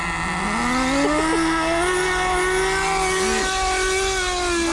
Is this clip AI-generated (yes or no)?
no